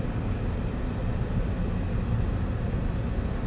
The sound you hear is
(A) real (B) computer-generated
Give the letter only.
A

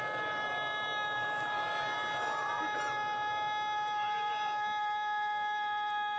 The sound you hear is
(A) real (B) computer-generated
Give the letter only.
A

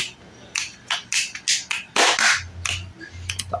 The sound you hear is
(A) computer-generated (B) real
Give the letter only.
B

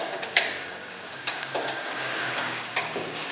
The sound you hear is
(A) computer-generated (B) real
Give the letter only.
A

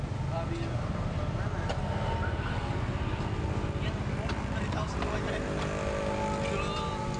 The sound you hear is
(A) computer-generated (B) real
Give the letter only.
B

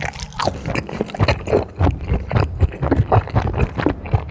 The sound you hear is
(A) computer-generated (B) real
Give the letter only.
B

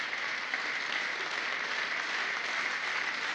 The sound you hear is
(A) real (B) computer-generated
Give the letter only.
B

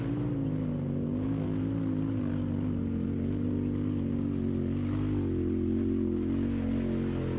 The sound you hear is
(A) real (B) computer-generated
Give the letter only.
A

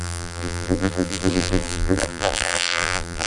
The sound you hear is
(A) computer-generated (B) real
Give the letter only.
A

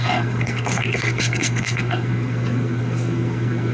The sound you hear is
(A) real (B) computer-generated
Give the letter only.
B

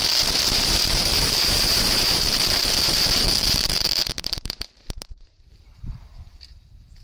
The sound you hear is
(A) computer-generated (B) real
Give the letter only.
A